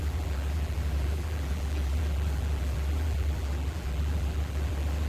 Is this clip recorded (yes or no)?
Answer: no